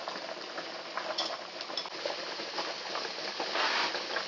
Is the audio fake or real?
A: real